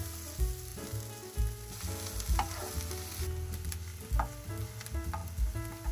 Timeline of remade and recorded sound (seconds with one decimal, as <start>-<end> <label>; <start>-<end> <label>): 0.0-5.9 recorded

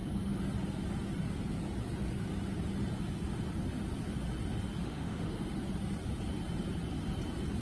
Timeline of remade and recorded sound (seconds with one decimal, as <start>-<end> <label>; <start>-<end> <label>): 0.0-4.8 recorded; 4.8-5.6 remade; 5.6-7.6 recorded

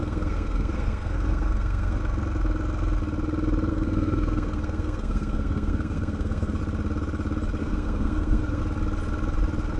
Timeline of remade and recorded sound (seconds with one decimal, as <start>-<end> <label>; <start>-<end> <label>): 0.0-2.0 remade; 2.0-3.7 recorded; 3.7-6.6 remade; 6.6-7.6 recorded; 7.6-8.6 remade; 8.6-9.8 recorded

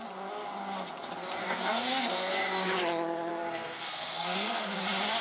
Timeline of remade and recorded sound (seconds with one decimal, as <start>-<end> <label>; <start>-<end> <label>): 0.0-1.4 recorded; 1.4-2.3 remade; 2.3-3.3 recorded; 3.3-4.8 remade; 4.8-5.2 recorded

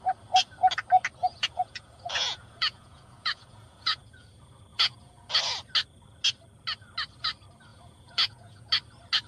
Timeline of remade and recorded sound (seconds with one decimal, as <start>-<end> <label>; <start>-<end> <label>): 0.0-1.2 recorded; 1.2-4.3 remade; 4.3-4.7 recorded; 4.7-5.3 remade; 5.3-7.7 recorded; 7.7-8.7 remade; 8.7-9.3 recorded

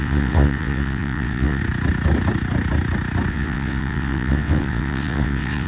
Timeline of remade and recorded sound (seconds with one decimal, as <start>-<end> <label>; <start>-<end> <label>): 0.0-1.6 remade; 1.6-3.3 recorded; 3.3-5.7 remade

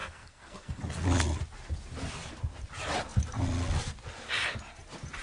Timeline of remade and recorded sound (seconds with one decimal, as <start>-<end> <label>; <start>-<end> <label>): 0.0-0.8 remade; 0.8-5.2 recorded

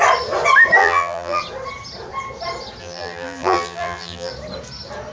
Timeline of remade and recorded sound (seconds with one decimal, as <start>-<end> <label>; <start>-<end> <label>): 0.0-0.8 recorded; 0.8-1.4 remade; 1.4-2.8 recorded; 2.8-4.3 remade; 4.3-5.1 recorded